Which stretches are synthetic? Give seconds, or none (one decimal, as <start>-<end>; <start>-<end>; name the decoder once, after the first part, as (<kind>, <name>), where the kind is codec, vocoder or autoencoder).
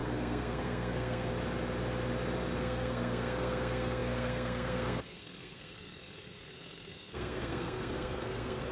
0.0-1.3 (codec, SNAC); 2.6-8.7